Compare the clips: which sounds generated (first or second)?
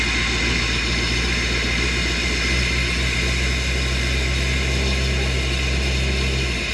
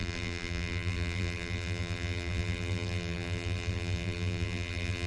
second